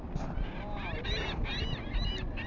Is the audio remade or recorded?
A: recorded